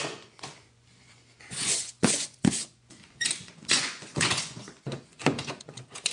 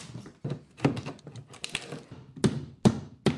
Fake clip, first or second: first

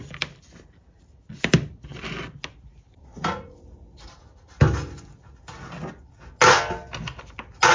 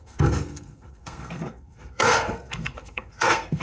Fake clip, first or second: second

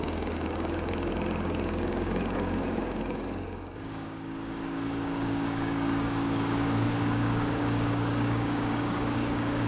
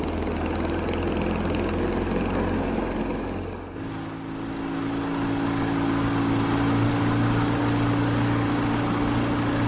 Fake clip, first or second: first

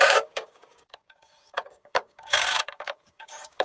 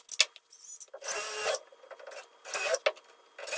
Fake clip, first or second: first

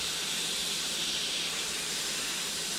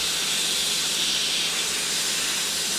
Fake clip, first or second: first